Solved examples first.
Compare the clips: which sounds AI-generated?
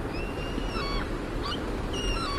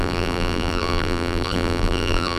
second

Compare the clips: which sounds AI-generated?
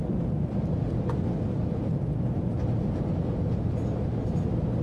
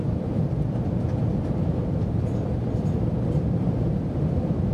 second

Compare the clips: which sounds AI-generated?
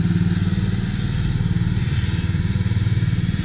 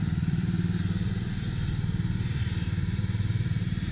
second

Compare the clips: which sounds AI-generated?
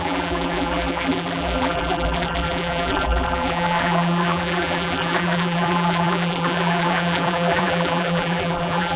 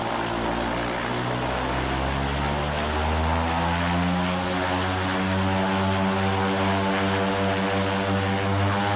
first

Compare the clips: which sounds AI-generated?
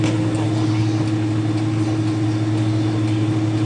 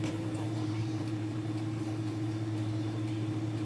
second